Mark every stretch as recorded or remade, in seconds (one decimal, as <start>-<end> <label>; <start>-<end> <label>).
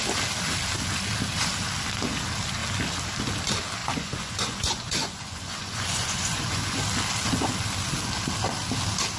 0.0-3.8 recorded; 3.8-6.8 remade; 6.8-9.2 recorded